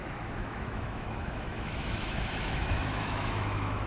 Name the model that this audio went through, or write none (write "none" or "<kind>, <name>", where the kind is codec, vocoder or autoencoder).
autoencoder, DAC-VAE